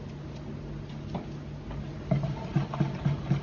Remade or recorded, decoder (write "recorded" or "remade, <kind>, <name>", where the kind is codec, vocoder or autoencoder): recorded